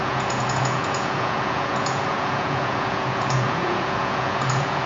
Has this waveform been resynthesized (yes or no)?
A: yes